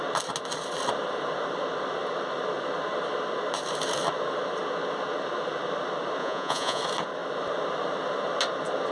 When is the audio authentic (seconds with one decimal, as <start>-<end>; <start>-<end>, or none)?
0.0-6.2; 6.8-8.9